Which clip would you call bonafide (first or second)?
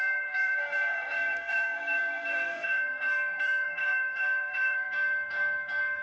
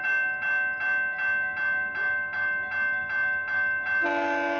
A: second